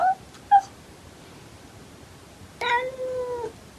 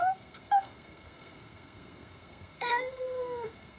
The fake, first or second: second